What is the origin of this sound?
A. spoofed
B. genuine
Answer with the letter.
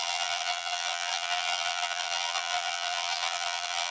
A